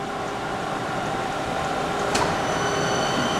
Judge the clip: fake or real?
fake